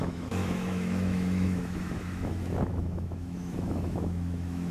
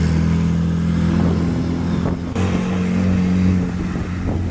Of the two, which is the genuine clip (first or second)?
second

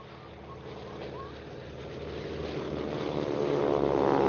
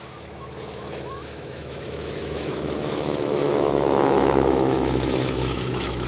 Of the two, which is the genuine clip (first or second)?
first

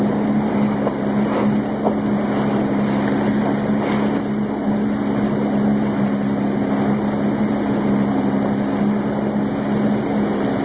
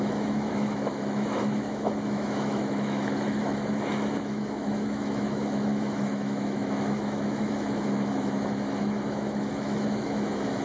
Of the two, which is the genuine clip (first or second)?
first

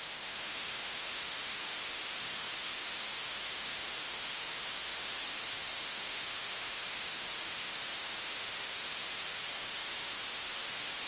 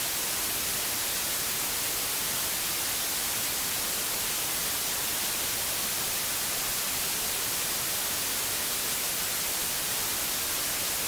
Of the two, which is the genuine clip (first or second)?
second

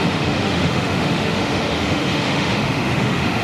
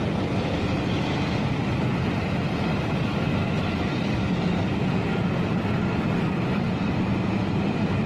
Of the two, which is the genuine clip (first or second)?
second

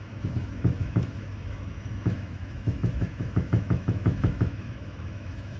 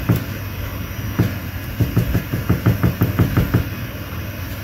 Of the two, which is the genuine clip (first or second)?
second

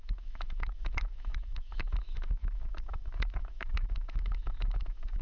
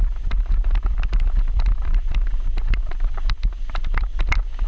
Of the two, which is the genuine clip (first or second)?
second